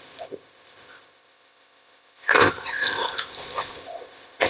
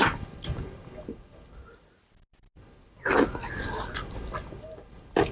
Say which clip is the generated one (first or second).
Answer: first